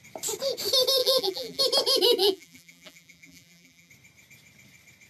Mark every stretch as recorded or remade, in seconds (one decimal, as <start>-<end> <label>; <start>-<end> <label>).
0.0-1.0 recorded; 1.0-1.6 remade; 1.6-2.2 recorded; 2.2-3.9 remade; 3.9-5.1 recorded